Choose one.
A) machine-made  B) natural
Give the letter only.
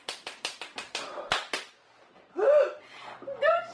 B